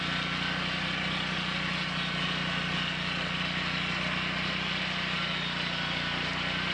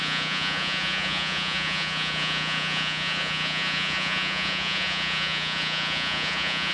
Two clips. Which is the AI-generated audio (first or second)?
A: second